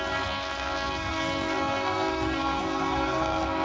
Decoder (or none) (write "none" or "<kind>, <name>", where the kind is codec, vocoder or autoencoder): codec, SNAC